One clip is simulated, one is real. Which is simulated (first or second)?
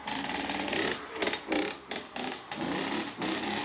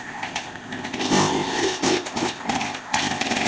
second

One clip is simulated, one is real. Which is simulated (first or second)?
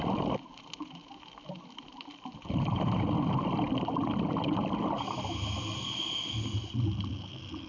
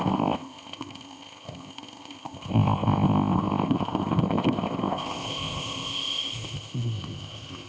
second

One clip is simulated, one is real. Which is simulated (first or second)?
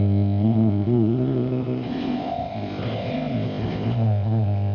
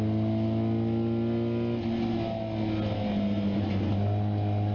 first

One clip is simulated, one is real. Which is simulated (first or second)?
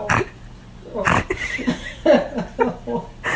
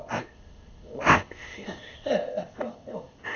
second